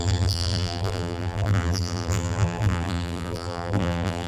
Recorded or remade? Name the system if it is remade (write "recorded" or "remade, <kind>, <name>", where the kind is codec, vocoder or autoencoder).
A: remade, vocoder, BigVGAN v2